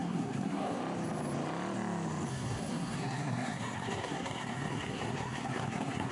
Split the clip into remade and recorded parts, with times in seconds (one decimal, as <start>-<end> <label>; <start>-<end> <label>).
0.0-0.8 remade; 0.8-2.3 recorded; 2.3-6.1 remade